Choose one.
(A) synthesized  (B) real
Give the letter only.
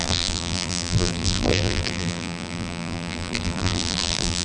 A